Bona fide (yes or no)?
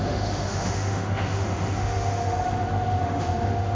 no